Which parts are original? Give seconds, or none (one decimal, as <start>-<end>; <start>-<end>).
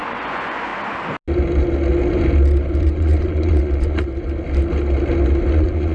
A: 0.7-2.8; 4.1-5.5